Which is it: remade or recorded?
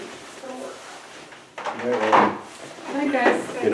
recorded